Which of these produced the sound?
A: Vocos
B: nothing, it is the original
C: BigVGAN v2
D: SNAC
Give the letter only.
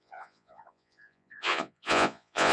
A